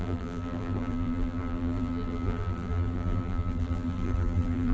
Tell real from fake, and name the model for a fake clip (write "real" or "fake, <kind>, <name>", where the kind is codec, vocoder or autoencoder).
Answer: fake, vocoder, BigVGAN v2